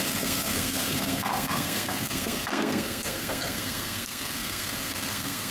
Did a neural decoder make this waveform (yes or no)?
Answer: yes